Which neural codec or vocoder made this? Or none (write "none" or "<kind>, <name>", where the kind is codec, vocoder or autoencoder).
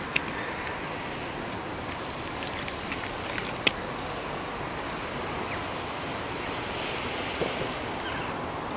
none